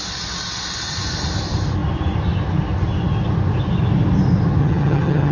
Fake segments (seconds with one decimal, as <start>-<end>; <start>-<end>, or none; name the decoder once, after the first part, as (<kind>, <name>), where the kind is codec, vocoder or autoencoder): 4.6-5.3 (vocoder, HiFi-GAN)